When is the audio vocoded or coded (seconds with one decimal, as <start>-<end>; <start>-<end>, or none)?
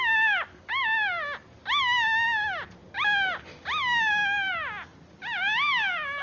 none